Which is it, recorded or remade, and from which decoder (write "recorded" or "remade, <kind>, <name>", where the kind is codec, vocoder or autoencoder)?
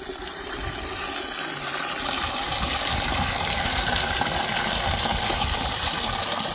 recorded